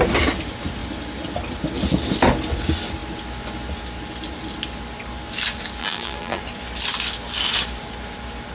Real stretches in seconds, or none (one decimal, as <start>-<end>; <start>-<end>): 0.0-5.8; 6.4-8.5